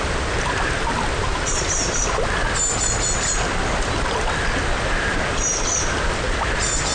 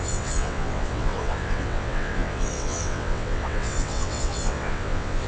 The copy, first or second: second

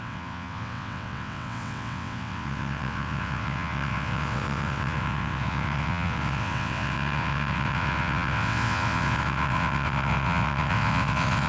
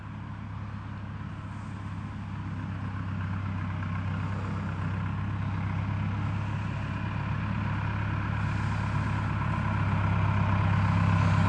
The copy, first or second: first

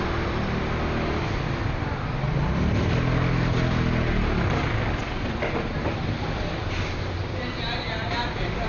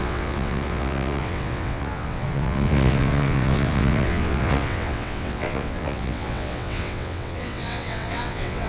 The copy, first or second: second